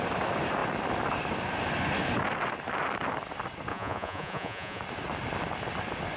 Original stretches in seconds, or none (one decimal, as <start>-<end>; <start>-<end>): 0.0-3.7; 4.8-6.2